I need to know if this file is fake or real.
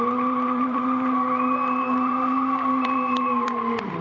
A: fake